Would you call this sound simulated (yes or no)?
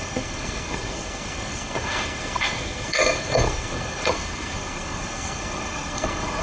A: yes